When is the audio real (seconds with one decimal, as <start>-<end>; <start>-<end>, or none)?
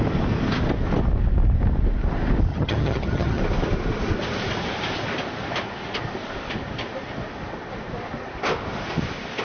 0.0-2.5; 3.4-9.4